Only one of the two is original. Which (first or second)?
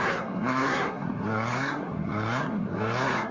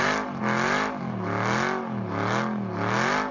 second